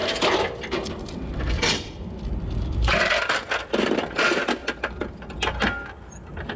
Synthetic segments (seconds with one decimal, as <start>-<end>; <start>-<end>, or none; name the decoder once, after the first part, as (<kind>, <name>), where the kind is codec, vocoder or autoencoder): 0.0-4.0 (vocoder, BigVGAN v2); 4.6-5.5